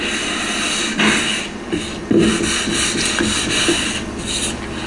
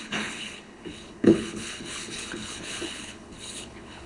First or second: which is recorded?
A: first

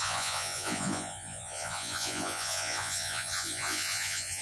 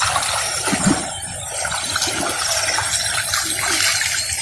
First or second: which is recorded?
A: second